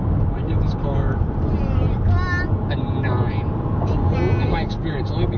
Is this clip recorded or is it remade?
recorded